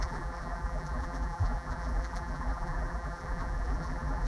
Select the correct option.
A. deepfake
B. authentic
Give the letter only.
A